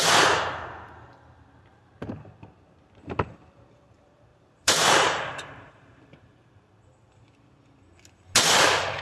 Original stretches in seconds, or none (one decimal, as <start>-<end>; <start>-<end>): 0.0-1.7; 2.3-4.3; 6.7-9.0